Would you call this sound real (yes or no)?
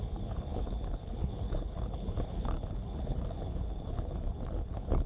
no